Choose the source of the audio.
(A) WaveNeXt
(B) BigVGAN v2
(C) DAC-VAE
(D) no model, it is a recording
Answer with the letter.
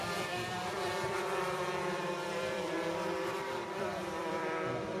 B